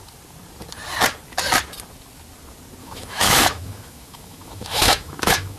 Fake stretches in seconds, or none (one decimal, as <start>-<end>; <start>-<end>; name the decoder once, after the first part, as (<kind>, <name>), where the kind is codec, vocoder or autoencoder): 2.8-5.6 (autoencoder, DAC-VAE)